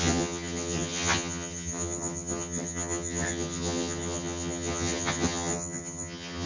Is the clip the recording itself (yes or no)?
no